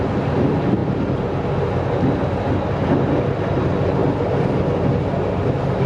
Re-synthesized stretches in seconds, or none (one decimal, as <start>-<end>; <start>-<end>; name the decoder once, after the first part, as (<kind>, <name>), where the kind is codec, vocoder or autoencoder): none